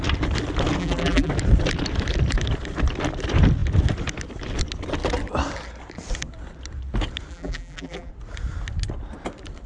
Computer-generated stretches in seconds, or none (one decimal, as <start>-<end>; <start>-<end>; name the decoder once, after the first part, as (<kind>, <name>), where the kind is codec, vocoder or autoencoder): 0.8-1.3 (vocoder, BigVGAN v2); 7.3-8.1